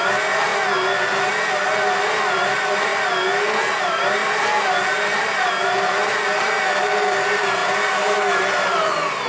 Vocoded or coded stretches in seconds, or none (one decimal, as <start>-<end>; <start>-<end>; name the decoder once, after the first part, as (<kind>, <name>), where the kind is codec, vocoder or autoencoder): 0.0-0.5 (vocoder, BigVGAN v2); 2.4-2.9; 3.7-9.3